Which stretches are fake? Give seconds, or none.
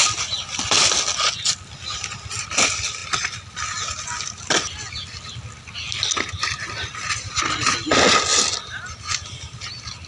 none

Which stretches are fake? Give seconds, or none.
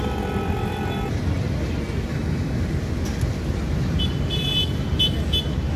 2.1-2.6 (autoencoder, DAC-VAE)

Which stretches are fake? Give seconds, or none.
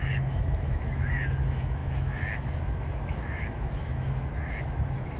0.0-5.2 (autoencoder, DAC-VAE)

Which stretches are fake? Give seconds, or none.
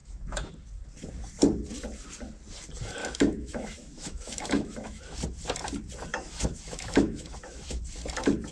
0.0-0.5 (autoencoder, DAC-VAE); 3.0-5.0; 6.1-7.8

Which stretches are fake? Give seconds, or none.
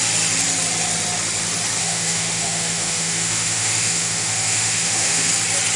1.8-5.3 (autoencoder, DAC-VAE)